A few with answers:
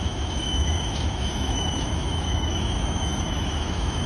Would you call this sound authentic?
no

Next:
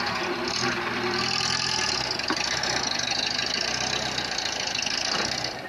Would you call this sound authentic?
yes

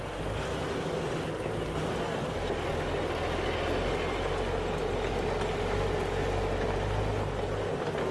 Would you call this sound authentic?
yes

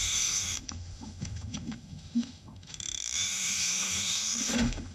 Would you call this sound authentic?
no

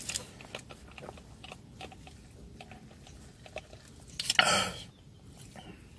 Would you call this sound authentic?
yes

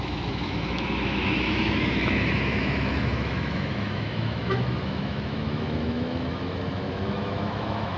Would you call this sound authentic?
no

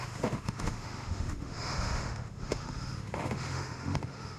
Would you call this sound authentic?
no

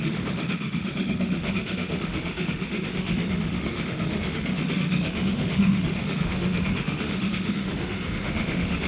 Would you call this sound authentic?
no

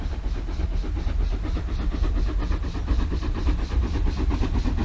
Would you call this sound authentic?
yes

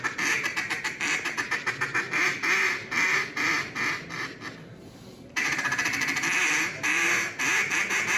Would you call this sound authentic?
yes